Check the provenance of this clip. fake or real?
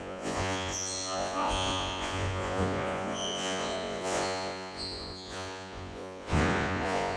fake